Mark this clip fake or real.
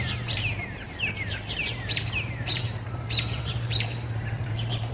fake